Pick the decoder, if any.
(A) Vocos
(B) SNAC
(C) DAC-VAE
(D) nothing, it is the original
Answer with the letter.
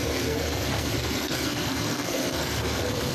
B